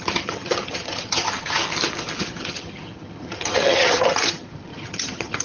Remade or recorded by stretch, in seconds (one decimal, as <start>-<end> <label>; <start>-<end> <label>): 0.0-1.6 remade; 1.6-2.2 recorded; 2.2-5.4 remade